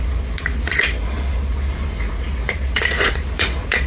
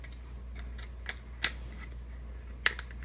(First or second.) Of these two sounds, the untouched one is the second